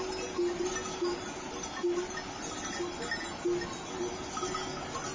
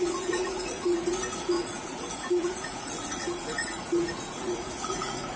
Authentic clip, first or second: first